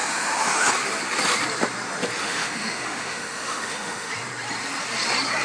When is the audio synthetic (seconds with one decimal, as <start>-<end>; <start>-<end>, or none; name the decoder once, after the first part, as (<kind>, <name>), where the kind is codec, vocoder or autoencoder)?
0.0-0.7 (autoencoder, DAC-VAE); 2.2-4.1